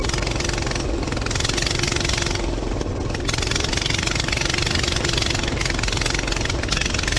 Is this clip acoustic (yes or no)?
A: yes